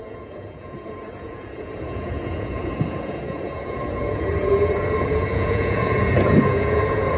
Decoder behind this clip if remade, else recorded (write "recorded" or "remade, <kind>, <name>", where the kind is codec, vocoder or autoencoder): remade, vocoder, Vocos